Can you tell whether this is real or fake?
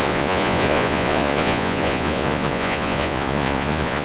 fake